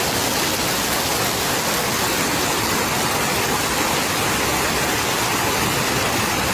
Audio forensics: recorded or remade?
recorded